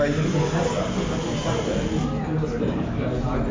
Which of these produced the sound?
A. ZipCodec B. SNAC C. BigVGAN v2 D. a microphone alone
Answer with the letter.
D